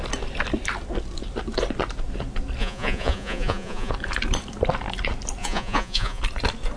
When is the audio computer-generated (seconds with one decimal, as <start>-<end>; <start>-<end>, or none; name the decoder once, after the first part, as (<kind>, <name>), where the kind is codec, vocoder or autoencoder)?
2.6-3.9 (vocoder, Vocos); 5.4-6.2